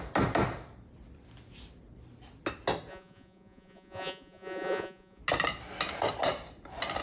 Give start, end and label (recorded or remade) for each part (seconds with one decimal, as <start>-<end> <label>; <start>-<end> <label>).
0.0-2.9 recorded; 2.9-5.2 remade; 5.2-7.0 recorded